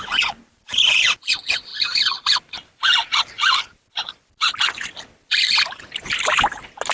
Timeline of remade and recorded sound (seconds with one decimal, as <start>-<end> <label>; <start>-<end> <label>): 0.0-1.7 recorded; 1.7-3.9 remade; 3.9-6.9 recorded

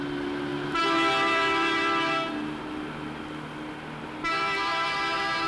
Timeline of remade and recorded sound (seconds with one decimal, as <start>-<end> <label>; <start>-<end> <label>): 0.0-5.5 recorded

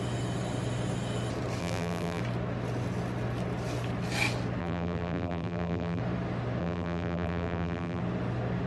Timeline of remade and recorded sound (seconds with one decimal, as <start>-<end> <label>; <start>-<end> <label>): 0.0-1.6 recorded; 1.6-2.2 remade; 2.2-4.6 recorded; 4.6-6.0 remade; 6.0-6.6 recorded; 6.6-8.0 remade; 8.0-8.7 recorded

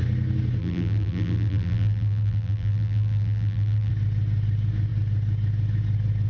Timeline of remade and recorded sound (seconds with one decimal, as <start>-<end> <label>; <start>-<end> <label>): 0.0-0.6 recorded; 0.6-3.9 remade; 3.9-6.3 recorded

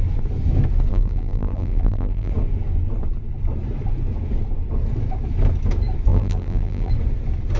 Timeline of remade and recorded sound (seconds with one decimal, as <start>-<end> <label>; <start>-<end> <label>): 0.0-0.9 recorded; 0.9-2.3 remade; 2.3-6.1 recorded; 6.1-6.9 remade; 6.9-7.6 recorded

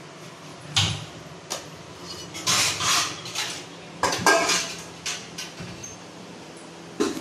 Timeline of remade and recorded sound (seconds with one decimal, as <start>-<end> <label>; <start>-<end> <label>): 0.0-0.5 recorded; 0.5-1.2 remade; 1.2-5.8 recorded; 5.8-6.5 remade; 6.5-7.2 recorded

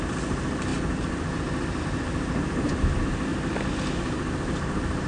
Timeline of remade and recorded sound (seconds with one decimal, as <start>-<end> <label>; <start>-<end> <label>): 0.0-0.7 recorded; 0.7-1.8 remade; 1.8-5.1 recorded

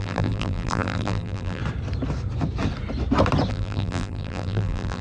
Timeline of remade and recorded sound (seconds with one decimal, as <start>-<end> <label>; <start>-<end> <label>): 0.0-1.6 remade; 1.6-3.5 recorded; 3.5-5.0 remade